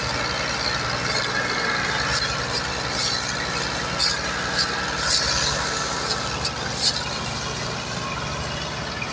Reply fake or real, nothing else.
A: real